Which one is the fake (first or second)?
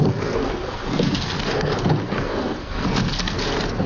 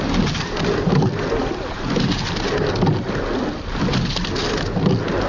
first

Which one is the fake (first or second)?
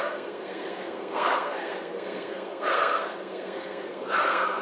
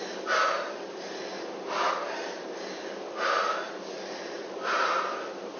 first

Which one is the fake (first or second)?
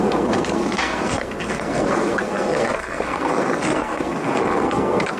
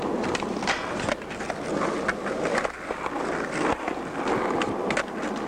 first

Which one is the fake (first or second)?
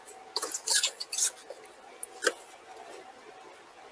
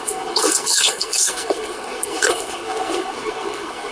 second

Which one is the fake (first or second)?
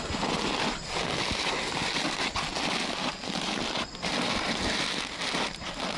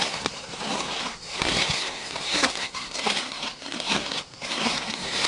second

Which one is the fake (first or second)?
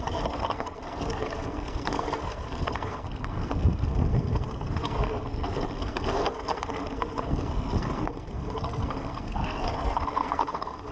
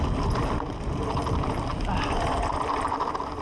first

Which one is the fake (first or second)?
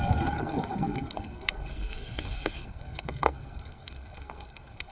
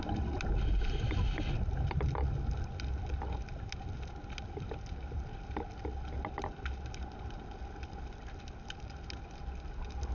first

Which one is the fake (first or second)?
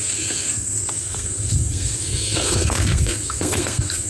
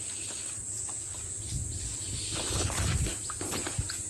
first